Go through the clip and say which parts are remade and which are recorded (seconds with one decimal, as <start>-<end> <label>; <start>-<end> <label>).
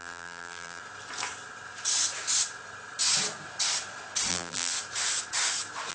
0.0-0.8 remade; 0.8-4.3 recorded; 4.3-4.7 remade; 4.7-5.9 recorded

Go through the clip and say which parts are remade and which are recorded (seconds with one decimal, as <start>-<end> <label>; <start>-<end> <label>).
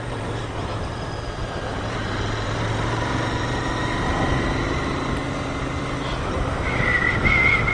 0.0-0.4 recorded; 0.4-5.0 remade; 5.0-7.7 recorded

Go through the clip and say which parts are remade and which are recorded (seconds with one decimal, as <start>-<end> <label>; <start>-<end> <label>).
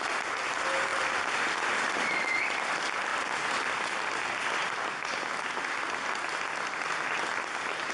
0.0-0.9 remade; 0.9-1.8 recorded; 1.8-3.1 remade; 3.1-7.9 recorded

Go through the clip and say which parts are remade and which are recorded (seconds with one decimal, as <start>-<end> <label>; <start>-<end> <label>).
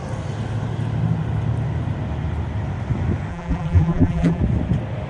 0.0-3.3 recorded; 3.3-4.4 remade; 4.4-5.1 recorded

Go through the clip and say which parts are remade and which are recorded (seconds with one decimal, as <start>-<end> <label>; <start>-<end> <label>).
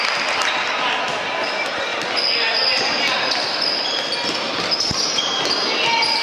0.0-6.2 recorded